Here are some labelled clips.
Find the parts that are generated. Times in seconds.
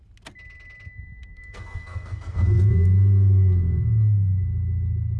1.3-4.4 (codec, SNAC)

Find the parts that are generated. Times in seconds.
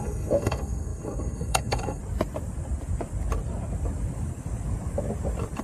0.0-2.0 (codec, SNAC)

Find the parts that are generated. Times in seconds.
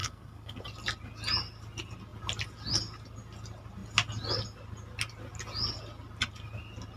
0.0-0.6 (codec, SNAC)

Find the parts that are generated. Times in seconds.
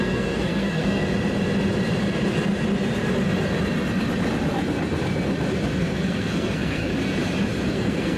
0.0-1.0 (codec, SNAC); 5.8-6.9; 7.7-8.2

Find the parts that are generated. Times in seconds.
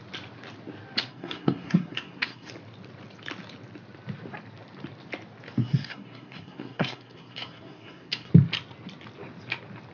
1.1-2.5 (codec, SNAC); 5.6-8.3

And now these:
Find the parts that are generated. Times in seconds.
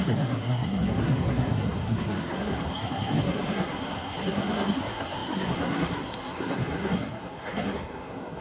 0.0-8.4 (codec, SNAC)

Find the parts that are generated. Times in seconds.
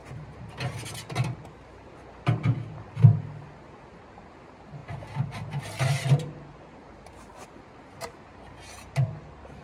none